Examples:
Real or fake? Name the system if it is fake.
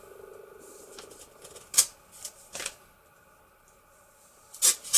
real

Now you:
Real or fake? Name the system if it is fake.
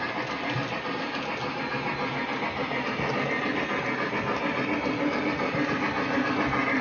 real